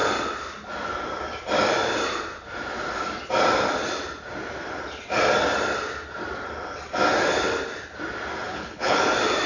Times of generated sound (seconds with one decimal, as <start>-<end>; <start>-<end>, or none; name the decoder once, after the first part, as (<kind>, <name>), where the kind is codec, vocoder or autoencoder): 8.5-9.0 (codec, HILCodec)